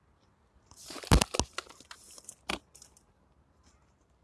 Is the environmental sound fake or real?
real